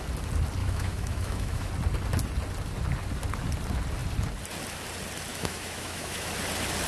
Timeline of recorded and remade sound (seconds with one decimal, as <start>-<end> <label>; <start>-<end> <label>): 0.0-0.6 recorded; 0.6-1.7 remade; 1.7-5.3 recorded; 5.3-6.3 remade; 6.3-6.9 recorded

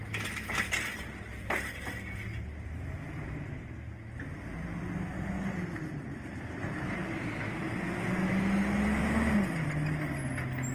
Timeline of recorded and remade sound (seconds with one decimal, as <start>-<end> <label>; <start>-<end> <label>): 0.0-10.7 recorded

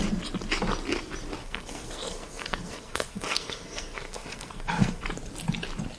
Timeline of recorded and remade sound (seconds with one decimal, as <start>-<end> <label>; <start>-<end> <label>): 0.0-1.4 recorded; 1.4-5.0 remade; 5.0-6.0 recorded

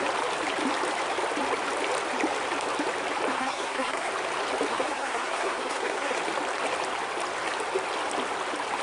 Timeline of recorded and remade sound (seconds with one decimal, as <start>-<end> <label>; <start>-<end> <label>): 0.0-3.3 recorded; 3.3-4.1 remade; 4.1-4.7 recorded; 4.7-6.2 remade; 6.2-8.8 recorded

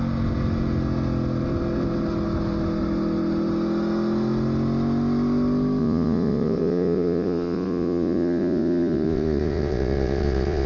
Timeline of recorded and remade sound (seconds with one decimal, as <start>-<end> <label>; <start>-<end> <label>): 0.0-5.8 recorded; 5.8-10.7 remade

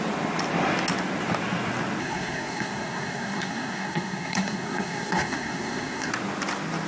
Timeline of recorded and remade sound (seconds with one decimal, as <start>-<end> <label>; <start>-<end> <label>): 0.0-2.0 recorded; 2.0-6.1 remade; 6.1-6.9 recorded

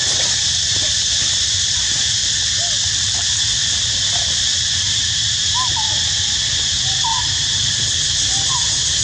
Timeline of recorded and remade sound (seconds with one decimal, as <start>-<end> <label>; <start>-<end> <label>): 0.0-2.2 remade; 2.2-2.8 recorded; 2.8-4.5 remade; 4.5-6.5 recorded; 6.5-7.1 remade; 7.1-8.5 recorded; 8.5-9.0 remade